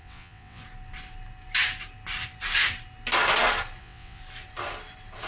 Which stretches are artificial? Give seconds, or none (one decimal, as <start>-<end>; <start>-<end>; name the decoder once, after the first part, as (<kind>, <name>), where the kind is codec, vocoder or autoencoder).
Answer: 0.0-0.6 (vocoder, WaveNeXt); 3.8-4.2